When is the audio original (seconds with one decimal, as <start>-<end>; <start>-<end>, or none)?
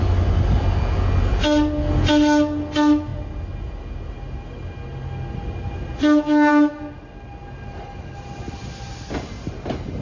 0.0-10.0